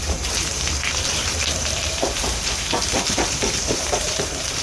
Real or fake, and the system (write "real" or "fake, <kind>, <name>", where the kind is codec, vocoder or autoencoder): fake, vocoder, BigVGAN v2